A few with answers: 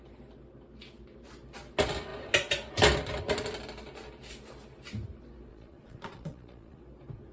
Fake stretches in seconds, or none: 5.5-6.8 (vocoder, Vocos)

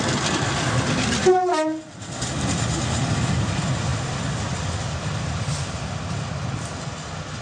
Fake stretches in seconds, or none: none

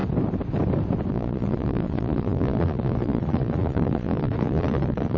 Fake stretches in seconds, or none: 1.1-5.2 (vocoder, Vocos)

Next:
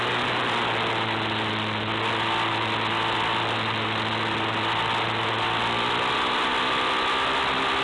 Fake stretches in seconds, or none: none

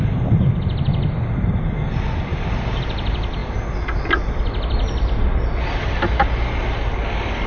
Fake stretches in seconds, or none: none

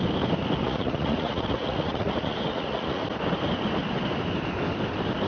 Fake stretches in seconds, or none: 0.6-3.0 (vocoder, Vocos)

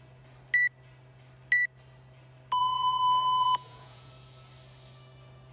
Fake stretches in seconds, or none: 2.6-4.1 (vocoder, Vocos)